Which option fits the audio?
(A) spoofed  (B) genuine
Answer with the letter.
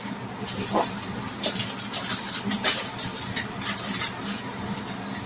B